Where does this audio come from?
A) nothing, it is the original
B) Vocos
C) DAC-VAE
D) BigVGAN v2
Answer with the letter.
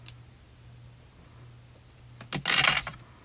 A